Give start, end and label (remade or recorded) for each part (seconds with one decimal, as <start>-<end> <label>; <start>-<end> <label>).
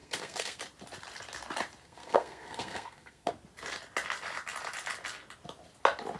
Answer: 0.0-0.6 remade; 0.6-1.8 recorded; 1.8-3.3 remade; 3.3-6.2 recorded